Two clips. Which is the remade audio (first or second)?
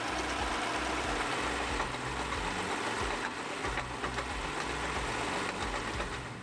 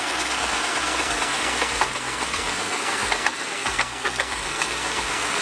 second